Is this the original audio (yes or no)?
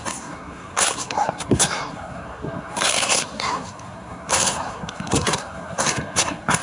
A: no